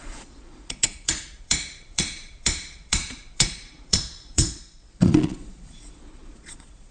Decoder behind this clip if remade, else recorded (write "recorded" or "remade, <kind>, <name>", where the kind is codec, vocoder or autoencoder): remade, vocoder, Vocos